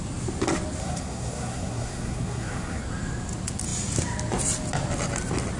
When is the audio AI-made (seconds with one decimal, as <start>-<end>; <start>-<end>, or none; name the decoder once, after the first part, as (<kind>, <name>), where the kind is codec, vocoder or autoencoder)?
0.8-2.8 (codec, SNAC)

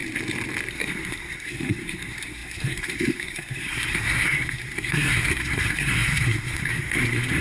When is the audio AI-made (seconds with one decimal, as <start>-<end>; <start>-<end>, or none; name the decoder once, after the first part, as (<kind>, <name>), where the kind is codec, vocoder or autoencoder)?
0.7-7.4 (codec, SNAC)

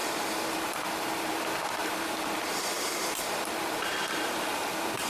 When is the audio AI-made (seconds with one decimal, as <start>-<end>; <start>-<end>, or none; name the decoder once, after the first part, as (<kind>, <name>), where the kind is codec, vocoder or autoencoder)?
0.0-1.4 (vocoder, BigVGAN v2); 1.8-5.1

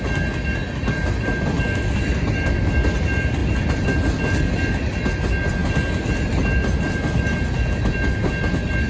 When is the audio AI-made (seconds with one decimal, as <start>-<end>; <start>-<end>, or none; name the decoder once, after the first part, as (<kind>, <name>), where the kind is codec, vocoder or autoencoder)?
0.6-2.7 (vocoder, BigVGAN v2); 3.4-3.9

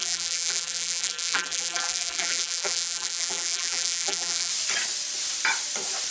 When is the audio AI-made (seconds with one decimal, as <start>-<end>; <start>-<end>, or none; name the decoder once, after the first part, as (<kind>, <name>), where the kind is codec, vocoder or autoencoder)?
0.0-4.5 (vocoder, BigVGAN v2)

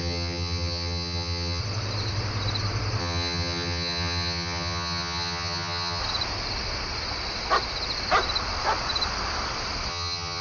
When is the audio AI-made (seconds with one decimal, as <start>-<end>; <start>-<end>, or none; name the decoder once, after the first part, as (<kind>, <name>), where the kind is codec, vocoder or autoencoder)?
0.0-1.6 (vocoder, HiFi-GAN); 3.0-6.0; 9.9-10.4